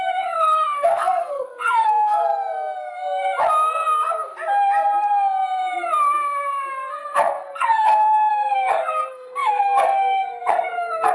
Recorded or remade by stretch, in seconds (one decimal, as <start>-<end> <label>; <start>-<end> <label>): 0.0-2.2 remade; 2.2-6.7 recorded; 6.7-11.1 remade

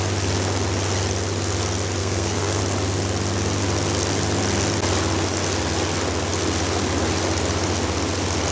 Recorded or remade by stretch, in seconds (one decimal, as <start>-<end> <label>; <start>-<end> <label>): 0.0-2.0 recorded; 2.0-2.6 remade; 2.6-8.5 recorded